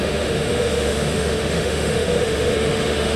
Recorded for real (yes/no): no